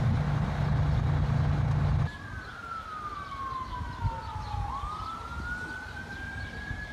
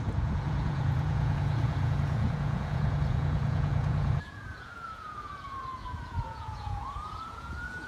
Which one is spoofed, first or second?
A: second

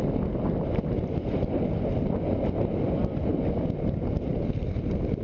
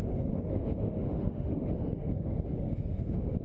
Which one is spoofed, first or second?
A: second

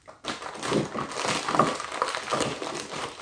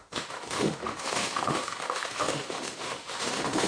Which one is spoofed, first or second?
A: second